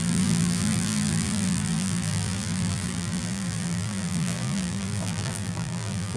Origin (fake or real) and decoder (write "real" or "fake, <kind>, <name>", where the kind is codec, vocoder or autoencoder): fake, vocoder, BigVGAN v2